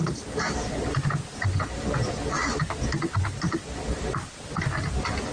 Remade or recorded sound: recorded